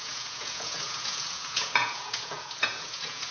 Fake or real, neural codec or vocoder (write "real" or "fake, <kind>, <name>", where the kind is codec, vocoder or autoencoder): fake, vocoder, Vocos